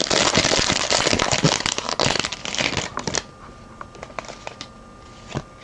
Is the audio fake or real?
real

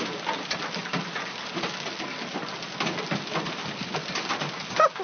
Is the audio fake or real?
real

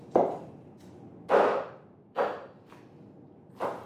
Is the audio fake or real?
real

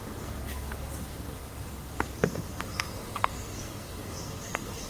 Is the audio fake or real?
fake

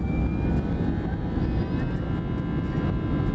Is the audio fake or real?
real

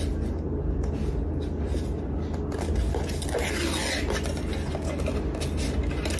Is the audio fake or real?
real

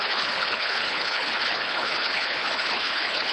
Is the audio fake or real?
fake